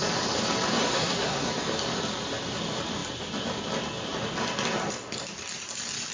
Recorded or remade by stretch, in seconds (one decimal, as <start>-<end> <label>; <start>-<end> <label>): 0.0-0.8 recorded; 0.8-1.5 remade; 1.5-6.1 recorded